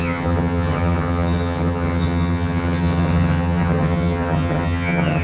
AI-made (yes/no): yes